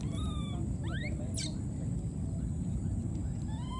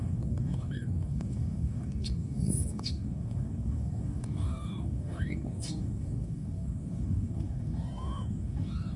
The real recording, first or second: first